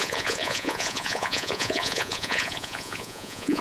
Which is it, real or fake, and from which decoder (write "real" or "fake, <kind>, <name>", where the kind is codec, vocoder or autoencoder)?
fake, vocoder, Vocos